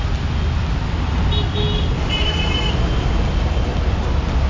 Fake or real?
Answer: real